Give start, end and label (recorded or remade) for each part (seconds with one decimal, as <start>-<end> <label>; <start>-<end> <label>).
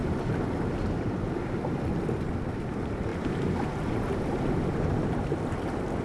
0.0-1.8 remade; 1.8-3.1 recorded; 3.1-4.5 remade; 4.5-4.9 recorded; 4.9-6.0 remade